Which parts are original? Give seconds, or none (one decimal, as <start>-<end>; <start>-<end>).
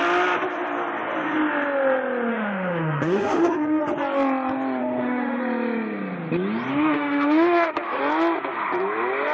0.0-2.3; 3.8-4.8; 5.4-6.7; 8.0-9.3